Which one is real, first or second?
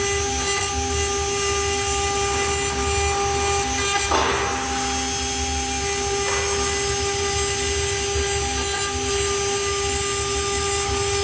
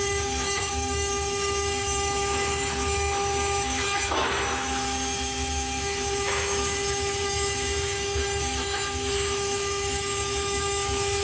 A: first